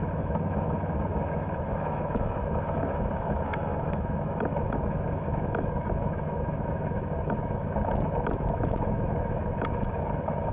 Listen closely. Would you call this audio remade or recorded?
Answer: remade